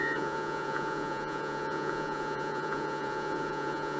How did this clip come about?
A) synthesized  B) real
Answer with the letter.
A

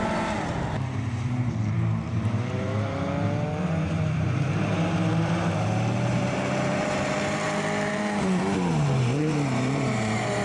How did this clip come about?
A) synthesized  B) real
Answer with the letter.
A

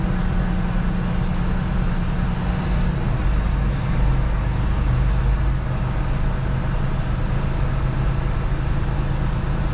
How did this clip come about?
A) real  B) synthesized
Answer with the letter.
A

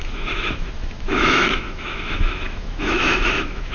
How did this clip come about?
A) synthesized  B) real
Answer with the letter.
A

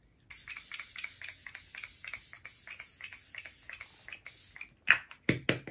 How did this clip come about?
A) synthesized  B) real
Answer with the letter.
B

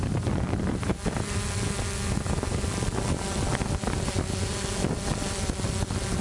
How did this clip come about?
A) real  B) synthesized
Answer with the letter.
A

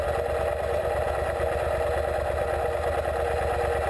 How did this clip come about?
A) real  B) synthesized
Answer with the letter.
A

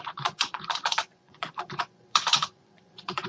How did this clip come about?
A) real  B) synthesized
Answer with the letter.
B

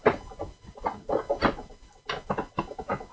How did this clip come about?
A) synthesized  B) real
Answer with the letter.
B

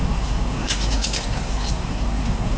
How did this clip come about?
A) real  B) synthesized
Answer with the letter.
B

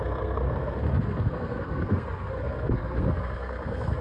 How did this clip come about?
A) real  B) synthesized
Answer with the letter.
B